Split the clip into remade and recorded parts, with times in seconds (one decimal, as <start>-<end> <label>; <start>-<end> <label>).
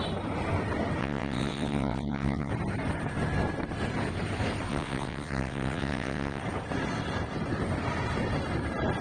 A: 0.0-1.0 recorded; 1.0-2.5 remade; 2.5-4.7 recorded; 4.7-6.4 remade; 6.4-9.0 recorded